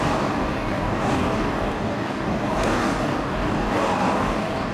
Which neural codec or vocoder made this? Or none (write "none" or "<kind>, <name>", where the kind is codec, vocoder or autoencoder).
codec, DAC